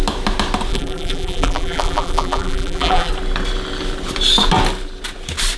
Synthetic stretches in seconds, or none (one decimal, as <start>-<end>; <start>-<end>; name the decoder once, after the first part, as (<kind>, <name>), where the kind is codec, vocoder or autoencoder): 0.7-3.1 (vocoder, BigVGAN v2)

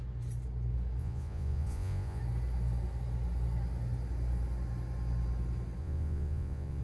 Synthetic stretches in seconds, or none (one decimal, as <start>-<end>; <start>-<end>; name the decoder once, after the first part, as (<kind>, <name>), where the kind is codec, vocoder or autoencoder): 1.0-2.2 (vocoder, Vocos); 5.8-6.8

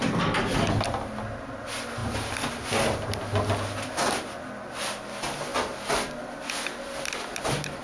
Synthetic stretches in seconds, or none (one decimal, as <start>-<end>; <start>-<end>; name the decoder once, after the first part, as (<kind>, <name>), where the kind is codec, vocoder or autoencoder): none

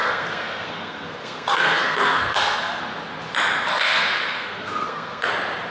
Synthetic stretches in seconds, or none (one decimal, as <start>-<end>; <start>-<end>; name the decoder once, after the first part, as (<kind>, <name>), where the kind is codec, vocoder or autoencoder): 0.0-2.8 (codec, SNAC); 3.7-5.3